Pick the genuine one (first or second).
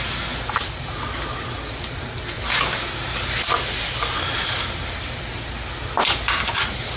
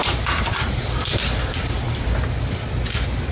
first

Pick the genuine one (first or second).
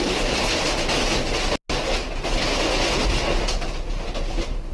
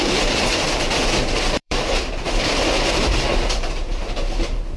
first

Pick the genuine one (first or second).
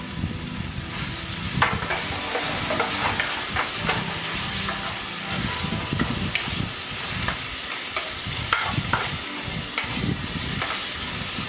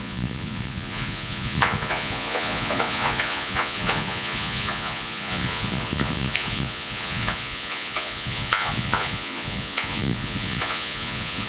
first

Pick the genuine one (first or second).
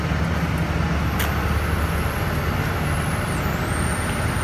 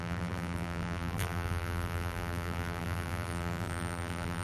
first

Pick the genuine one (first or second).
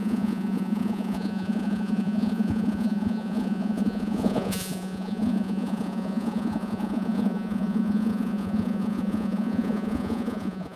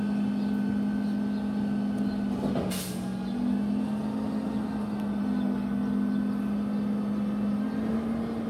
second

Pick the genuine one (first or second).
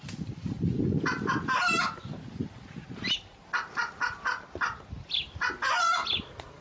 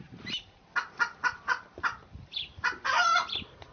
first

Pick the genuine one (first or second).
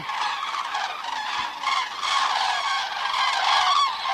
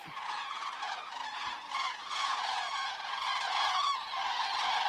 first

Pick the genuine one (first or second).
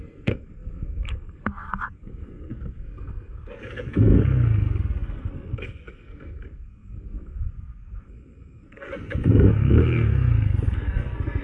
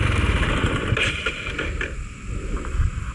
second